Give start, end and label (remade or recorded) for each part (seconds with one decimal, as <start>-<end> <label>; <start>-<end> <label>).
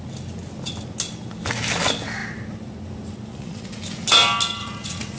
0.0-3.3 recorded; 3.3-3.8 remade; 3.8-4.6 recorded; 4.6-5.2 remade